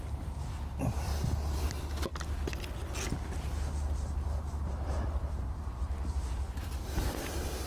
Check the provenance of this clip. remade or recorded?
recorded